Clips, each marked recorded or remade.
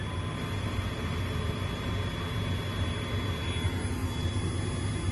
recorded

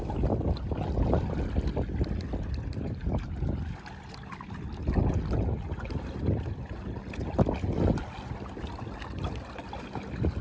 recorded